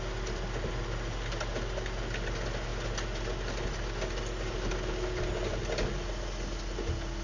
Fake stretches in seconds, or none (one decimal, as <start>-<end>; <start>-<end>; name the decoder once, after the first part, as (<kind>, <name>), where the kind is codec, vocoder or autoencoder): none